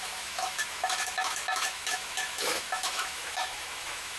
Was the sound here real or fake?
fake